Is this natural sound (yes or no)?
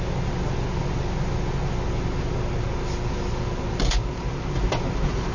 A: yes